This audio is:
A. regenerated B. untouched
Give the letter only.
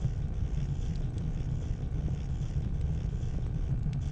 A